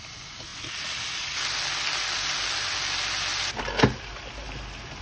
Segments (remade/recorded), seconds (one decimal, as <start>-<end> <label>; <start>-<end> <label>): 0.0-5.0 recorded